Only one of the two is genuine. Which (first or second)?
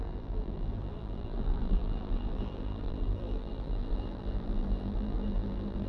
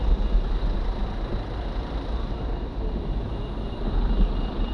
second